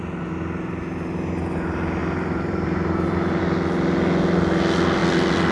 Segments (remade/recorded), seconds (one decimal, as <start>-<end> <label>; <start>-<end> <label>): 0.0-2.0 recorded; 2.0-3.4 remade; 3.4-5.5 recorded